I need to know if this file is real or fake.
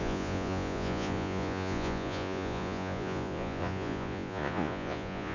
fake